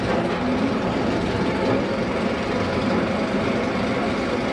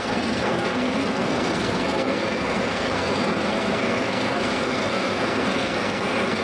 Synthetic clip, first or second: second